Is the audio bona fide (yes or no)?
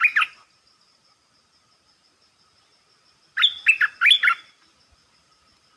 yes